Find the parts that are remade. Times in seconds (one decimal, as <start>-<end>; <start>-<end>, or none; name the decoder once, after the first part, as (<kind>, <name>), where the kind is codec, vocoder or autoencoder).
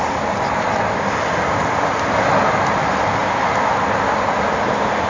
none